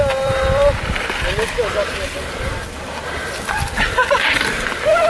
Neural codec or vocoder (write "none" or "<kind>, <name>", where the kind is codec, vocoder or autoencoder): vocoder, BigVGAN v2